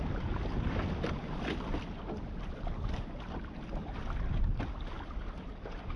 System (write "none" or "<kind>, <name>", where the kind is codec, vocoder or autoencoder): none